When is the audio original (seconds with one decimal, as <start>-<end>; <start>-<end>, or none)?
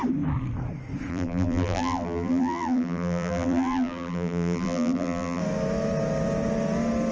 0.0-1.1; 5.4-7.1